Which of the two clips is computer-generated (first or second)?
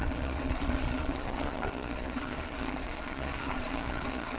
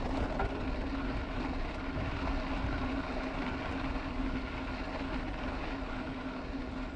first